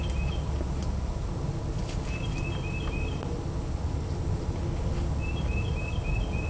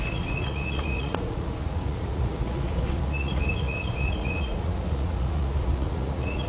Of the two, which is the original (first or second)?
first